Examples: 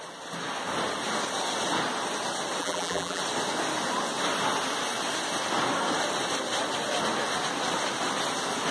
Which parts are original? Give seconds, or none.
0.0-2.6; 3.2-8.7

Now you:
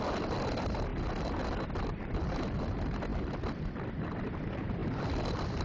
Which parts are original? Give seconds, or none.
0.0-3.1; 4.2-5.6

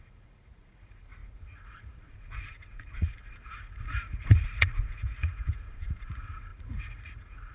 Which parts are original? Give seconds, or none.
none